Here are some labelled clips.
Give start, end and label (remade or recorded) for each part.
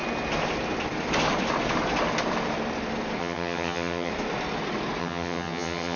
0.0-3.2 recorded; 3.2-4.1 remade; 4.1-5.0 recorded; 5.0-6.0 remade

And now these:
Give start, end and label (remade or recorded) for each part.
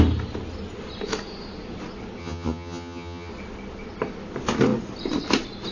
0.0-2.2 recorded; 2.2-3.3 remade; 3.3-5.7 recorded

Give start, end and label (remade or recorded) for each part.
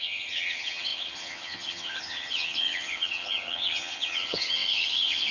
0.0-5.3 remade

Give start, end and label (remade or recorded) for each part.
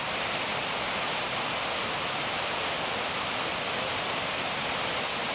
0.0-5.3 recorded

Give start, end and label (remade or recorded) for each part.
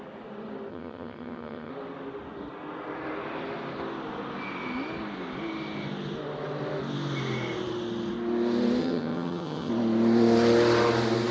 0.0-0.7 recorded; 0.7-1.7 remade; 1.7-8.8 recorded; 8.8-9.7 remade; 9.7-11.3 recorded